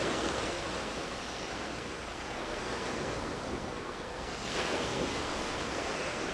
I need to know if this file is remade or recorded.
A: remade